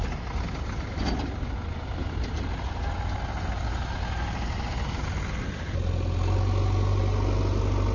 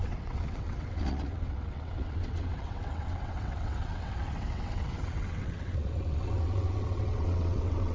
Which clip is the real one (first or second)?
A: first